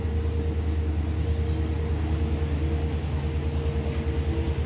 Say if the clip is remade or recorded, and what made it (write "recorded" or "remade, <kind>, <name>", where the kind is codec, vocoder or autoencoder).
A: recorded